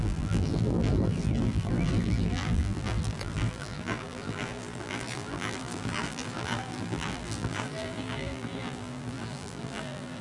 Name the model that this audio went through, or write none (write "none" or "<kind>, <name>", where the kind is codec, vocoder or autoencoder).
vocoder, BigVGAN v2